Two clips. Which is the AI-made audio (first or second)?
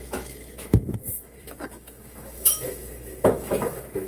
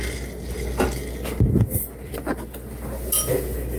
first